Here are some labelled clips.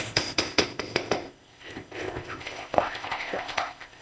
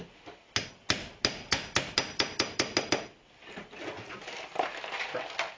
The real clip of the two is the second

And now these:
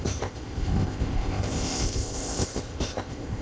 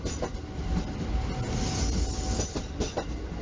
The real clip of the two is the second